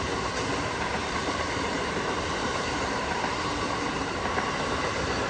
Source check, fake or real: fake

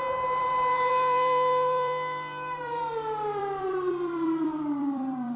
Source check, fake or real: fake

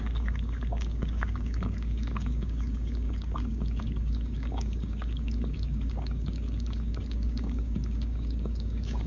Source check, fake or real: fake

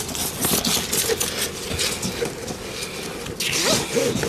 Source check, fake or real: real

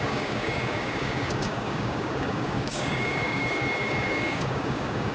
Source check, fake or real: fake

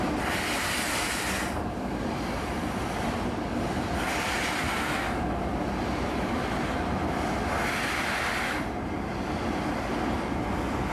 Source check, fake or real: real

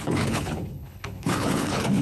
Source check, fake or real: fake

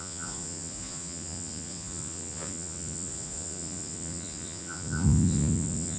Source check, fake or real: fake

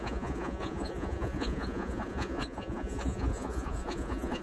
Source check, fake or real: fake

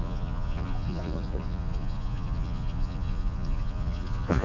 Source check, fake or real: fake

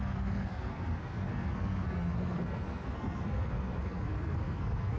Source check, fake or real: fake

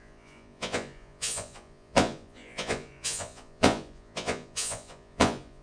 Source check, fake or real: fake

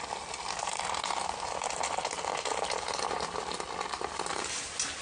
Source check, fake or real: real